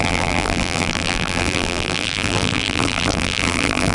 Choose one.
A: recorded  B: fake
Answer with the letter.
B